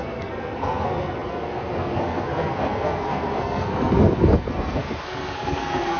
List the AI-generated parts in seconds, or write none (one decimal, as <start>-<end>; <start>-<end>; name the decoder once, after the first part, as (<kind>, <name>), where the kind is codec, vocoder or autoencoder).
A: 0.0-6.0 (codec, SNAC)